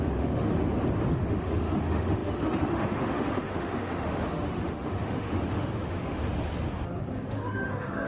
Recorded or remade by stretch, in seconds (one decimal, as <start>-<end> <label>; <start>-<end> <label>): 0.0-0.6 remade; 0.6-1.1 recorded; 1.1-6.2 remade; 6.2-7.1 recorded; 7.1-8.1 remade